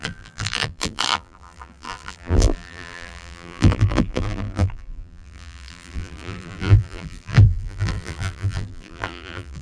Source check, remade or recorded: remade